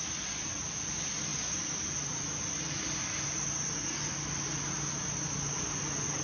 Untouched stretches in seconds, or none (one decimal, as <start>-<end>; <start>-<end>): 0.0-6.2